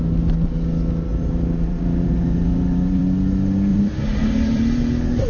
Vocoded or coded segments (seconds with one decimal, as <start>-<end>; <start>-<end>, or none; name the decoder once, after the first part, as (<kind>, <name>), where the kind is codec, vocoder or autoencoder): 1.1-3.0 (vocoder, BigVGAN v2); 3.7-4.8